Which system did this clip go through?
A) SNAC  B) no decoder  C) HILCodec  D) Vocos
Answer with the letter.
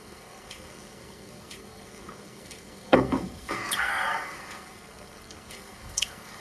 A